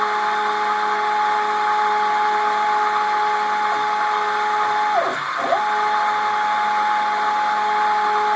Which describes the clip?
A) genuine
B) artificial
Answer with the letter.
A